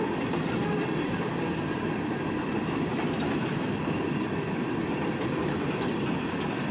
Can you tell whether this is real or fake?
real